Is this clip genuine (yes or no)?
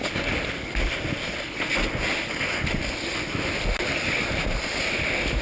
yes